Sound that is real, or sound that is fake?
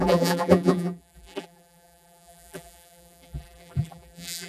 fake